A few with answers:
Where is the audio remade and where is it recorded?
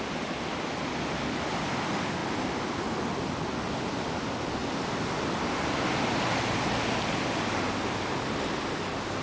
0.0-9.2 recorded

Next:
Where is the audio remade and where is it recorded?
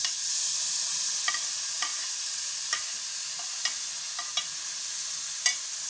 0.0-5.9 recorded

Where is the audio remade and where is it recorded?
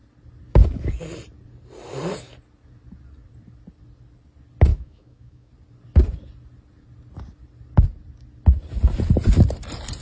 0.0-4.7 recorded; 4.7-5.5 remade; 5.5-10.0 recorded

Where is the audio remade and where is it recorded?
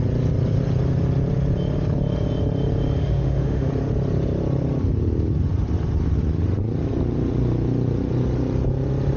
0.0-3.0 recorded; 3.0-3.7 remade; 3.7-9.2 recorded